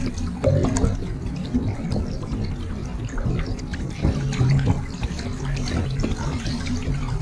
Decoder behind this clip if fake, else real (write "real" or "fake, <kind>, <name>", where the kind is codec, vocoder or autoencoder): real